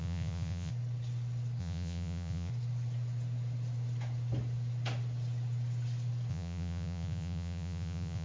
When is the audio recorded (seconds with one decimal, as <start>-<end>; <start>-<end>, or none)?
0.7-1.6; 2.5-6.3